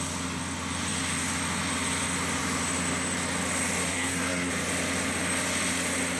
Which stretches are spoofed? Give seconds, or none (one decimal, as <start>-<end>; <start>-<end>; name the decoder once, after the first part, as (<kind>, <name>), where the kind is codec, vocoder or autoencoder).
3.9-4.5 (codec, SNAC)